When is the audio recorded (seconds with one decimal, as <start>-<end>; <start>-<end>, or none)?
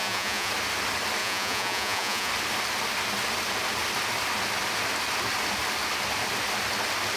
0.5-1.2; 2.3-7.2